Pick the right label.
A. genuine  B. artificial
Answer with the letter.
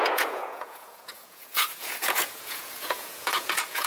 B